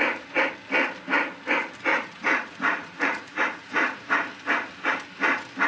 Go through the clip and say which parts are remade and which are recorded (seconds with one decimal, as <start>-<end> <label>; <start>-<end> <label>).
0.0-1.9 recorded; 1.9-4.1 remade; 4.1-5.7 recorded